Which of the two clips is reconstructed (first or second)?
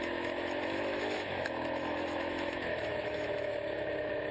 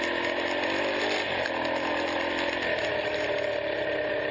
first